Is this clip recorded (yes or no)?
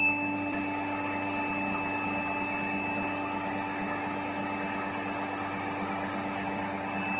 yes